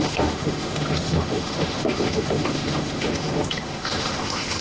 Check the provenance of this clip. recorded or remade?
remade